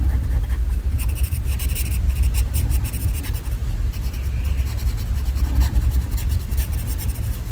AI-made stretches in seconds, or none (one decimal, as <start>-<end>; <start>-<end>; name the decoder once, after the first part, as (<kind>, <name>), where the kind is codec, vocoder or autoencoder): 0.6-3.2 (vocoder, BigVGAN v2); 6.5-7.0